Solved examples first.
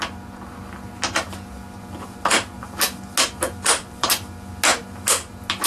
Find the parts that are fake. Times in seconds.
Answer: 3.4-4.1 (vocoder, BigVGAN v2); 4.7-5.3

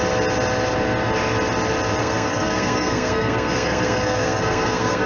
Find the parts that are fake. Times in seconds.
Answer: 2.0-5.1 (codec, SNAC)